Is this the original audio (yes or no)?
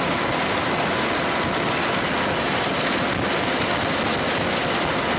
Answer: yes